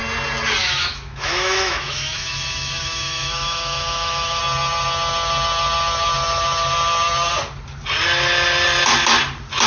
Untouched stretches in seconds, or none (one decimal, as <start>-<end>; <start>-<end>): 0.0-0.6; 4.4-9.7